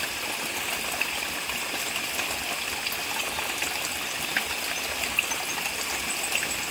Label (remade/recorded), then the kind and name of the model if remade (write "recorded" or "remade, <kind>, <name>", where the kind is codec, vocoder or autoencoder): recorded